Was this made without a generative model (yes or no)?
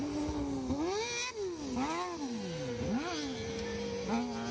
yes